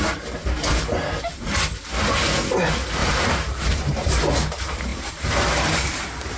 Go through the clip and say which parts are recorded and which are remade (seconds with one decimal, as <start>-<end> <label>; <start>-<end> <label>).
0.0-3.0 recorded; 3.0-4.1 remade; 4.1-4.9 recorded; 4.9-6.4 remade